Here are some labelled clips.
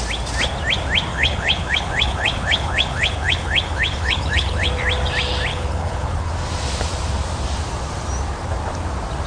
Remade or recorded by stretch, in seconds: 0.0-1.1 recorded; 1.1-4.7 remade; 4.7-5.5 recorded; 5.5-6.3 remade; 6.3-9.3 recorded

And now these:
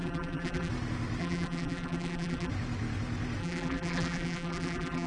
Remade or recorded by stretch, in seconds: 0.0-0.7 remade; 0.7-1.2 recorded; 1.2-2.5 remade; 2.5-3.4 recorded; 3.4-5.1 remade

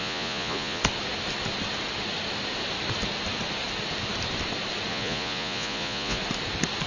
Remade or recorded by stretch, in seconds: 0.0-0.8 remade; 0.8-4.9 recorded; 4.9-6.2 remade; 6.2-6.9 recorded

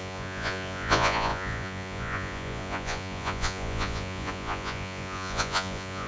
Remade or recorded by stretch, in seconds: 0.0-6.1 remade

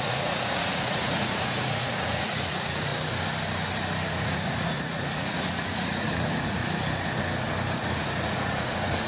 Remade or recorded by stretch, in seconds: 0.0-2.9 remade; 2.9-4.1 recorded; 4.1-6.6 remade; 6.6-7.9 recorded; 7.9-9.1 remade

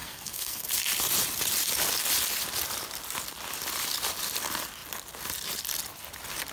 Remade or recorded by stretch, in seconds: 0.0-0.7 remade; 0.7-6.5 recorded

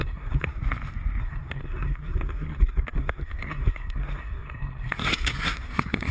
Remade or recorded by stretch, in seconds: 0.0-0.6 remade; 0.6-1.2 recorded; 1.2-6.1 remade

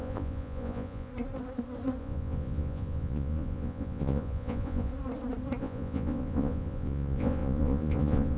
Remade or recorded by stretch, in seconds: 0.0-1.1 remade; 1.1-2.0 recorded; 2.0-4.9 remade; 4.9-5.6 recorded; 5.6-8.4 remade